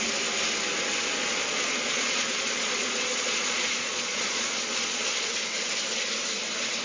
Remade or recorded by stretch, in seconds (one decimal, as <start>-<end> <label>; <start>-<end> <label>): 0.0-1.2 recorded; 1.2-5.3 remade; 5.3-6.8 recorded